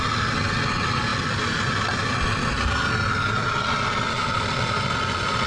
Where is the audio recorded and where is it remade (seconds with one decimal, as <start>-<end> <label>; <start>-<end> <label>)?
0.0-5.5 recorded